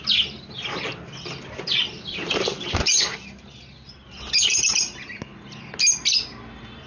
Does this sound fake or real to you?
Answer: real